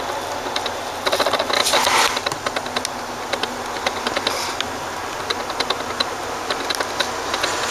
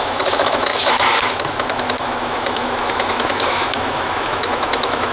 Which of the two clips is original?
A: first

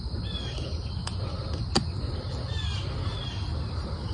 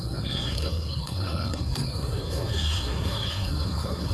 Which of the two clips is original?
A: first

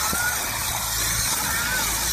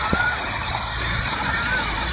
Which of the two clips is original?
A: first